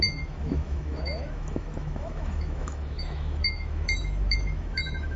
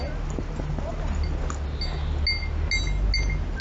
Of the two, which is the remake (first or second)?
first